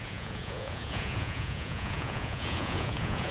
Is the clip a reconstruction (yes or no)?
yes